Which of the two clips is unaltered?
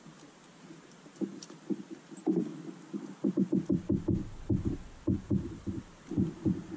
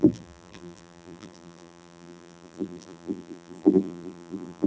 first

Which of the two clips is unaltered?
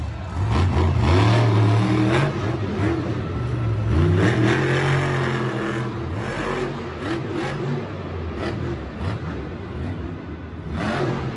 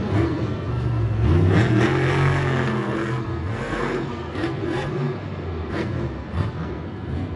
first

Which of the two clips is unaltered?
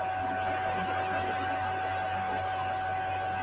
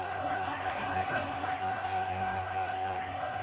first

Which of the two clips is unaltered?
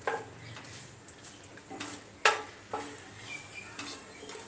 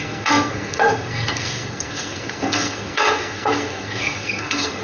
first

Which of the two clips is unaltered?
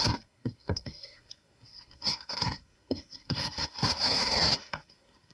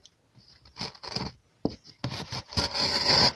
second